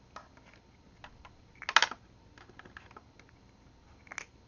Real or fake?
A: real